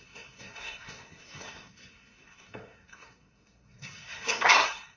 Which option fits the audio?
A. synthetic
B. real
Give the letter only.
A